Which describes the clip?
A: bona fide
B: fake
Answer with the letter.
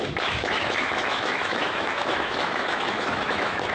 B